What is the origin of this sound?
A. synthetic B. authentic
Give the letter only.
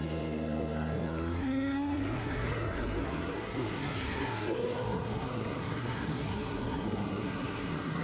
A